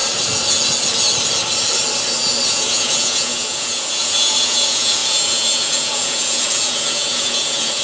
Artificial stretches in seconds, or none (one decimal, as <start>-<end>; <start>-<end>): 2.5-7.8